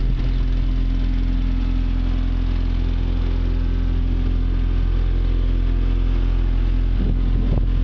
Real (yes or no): yes